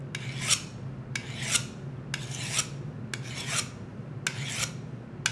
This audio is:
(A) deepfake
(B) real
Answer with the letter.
B